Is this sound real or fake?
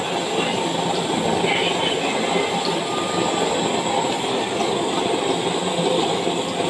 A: real